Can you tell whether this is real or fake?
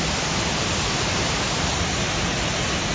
real